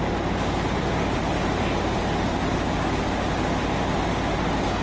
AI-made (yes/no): no